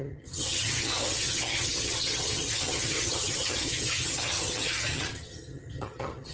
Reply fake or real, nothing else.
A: fake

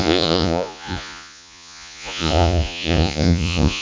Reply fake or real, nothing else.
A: fake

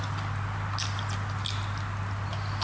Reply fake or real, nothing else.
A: real